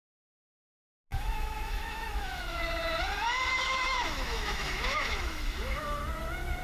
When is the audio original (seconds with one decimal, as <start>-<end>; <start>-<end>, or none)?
0.0-1.1; 2.6-3.5; 6.0-6.6